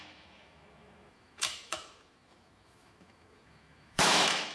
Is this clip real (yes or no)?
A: no